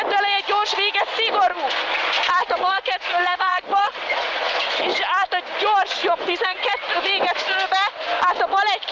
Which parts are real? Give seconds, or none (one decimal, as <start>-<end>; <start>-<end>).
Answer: 0.0-2.4; 4.5-6.0; 6.7-8.9